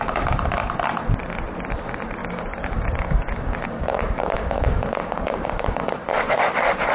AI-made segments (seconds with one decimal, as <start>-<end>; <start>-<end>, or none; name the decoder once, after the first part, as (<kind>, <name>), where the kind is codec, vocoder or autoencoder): 2.2-6.1 (codec, DAC)